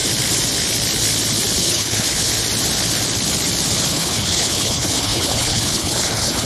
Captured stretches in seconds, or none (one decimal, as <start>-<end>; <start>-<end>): 0.0-1.6; 2.3-3.9